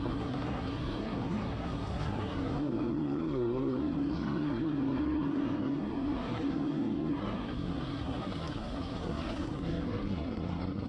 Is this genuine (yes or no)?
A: no